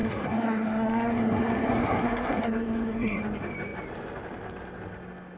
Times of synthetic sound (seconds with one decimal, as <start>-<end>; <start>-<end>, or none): 0.0-3.2